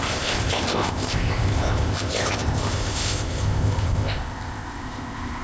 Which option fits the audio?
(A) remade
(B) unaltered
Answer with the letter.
A